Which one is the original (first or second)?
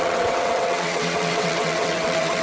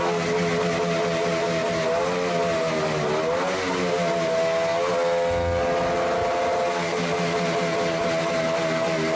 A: second